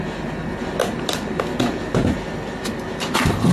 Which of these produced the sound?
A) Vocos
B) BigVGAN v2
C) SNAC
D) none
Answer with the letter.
D